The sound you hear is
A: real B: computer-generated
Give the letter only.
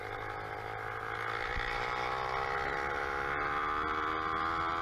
A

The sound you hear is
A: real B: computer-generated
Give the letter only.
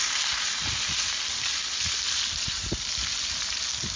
A